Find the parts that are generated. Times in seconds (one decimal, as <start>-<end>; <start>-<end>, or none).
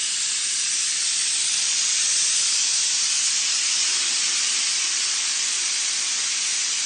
0.0-2.9